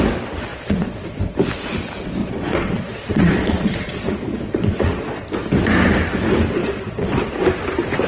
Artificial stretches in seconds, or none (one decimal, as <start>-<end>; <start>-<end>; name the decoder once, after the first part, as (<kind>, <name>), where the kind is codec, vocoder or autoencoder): 0.5-1.2 (vocoder, Vocos); 2.2-5.2; 6.6-7.3